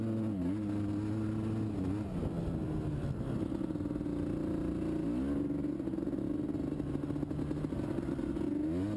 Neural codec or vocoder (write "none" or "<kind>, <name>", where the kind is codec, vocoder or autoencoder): none